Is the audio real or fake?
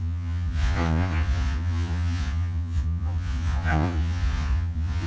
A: fake